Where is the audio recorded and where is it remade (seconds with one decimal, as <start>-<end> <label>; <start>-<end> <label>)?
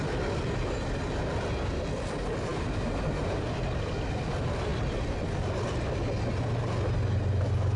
0.0-7.8 recorded